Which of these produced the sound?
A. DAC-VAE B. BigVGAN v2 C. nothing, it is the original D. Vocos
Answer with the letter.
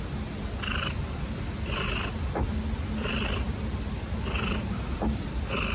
C